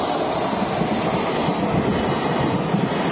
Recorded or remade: recorded